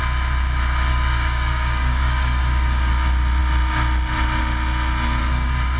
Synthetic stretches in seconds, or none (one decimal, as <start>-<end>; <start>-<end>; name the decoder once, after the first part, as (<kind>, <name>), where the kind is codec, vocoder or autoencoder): 0.9-2.9 (codec, DAC); 5.2-5.8